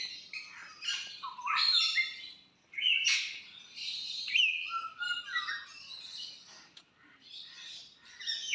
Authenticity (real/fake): real